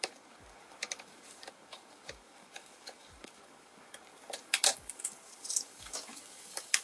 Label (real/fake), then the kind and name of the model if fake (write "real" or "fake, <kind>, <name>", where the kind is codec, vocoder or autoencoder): fake, codec, DAC